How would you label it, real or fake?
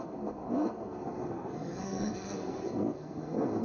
fake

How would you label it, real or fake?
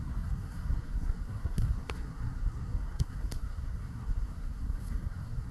fake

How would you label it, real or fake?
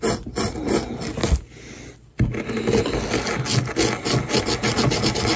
real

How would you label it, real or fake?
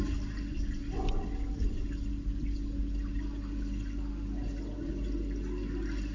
real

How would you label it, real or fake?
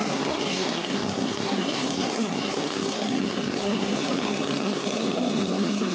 fake